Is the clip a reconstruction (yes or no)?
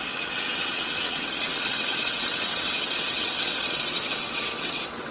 yes